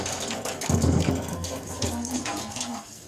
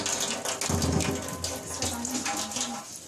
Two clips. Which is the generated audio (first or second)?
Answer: first